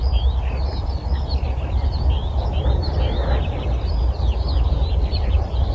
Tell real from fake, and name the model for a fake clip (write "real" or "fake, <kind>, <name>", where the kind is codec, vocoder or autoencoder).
real